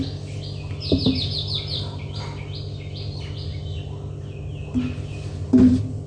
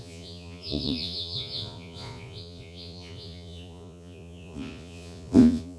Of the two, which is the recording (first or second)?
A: first